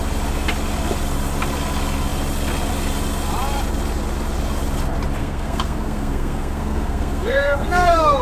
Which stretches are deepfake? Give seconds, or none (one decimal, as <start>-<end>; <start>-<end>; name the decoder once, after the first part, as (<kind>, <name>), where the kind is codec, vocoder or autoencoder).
5.2-8.2 (codec, SNAC)